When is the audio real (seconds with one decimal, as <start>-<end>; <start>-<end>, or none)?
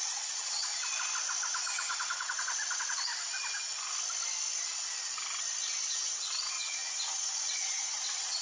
0.7-1.5; 3.1-6.5